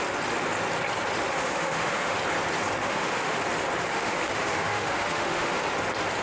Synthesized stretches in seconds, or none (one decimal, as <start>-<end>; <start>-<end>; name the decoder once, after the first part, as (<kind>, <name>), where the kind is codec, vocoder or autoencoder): 1.3-2.2 (autoencoder, DAC-VAE); 2.8-3.4; 3.9-5.6